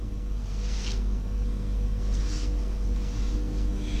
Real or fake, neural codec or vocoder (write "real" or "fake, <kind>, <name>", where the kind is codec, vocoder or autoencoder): fake, codec, SNAC